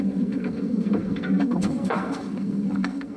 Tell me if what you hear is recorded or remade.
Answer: remade